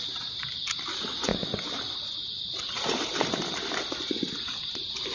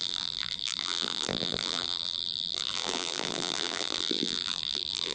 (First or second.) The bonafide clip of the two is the first